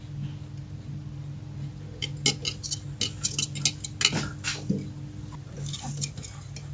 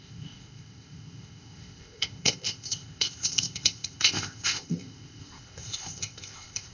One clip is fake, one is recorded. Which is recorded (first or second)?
first